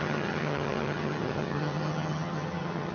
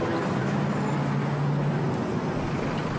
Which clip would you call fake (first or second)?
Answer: first